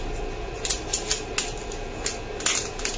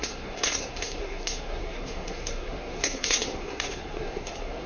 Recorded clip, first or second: first